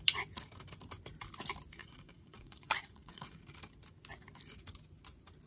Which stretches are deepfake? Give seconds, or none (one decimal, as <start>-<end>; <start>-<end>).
1.8-3.4